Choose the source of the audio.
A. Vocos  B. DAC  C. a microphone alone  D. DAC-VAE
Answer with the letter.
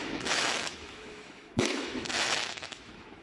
D